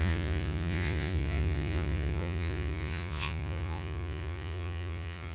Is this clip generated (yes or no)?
yes